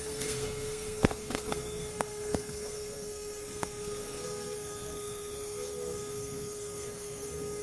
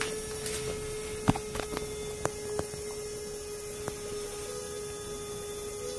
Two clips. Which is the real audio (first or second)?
second